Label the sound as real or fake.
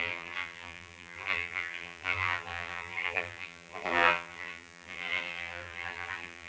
fake